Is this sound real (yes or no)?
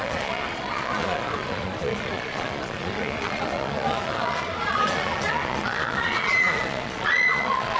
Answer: no